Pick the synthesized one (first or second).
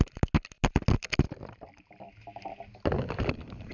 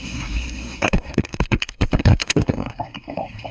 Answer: second